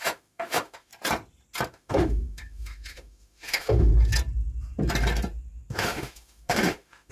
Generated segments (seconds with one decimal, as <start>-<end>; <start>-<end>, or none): 0.0-0.9; 1.7-3.9; 5.7-7.1